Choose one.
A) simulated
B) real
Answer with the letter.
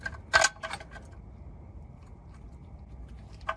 B